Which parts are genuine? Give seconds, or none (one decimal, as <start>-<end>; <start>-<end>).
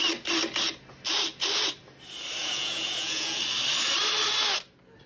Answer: 0.0-2.4; 3.4-5.1